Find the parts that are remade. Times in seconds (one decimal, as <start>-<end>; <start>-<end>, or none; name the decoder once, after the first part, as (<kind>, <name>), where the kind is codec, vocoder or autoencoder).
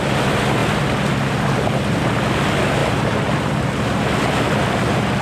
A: 2.8-4.0 (vocoder, BigVGAN v2)